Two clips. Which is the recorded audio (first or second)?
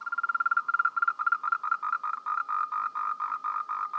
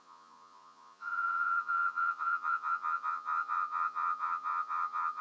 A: first